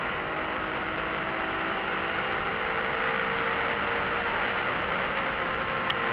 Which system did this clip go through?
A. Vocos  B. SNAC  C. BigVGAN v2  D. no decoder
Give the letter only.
D